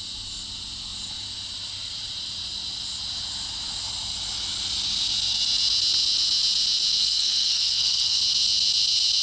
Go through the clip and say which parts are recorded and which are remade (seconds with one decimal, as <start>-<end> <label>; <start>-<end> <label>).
0.0-7.0 recorded; 7.0-8.2 remade; 8.2-9.2 recorded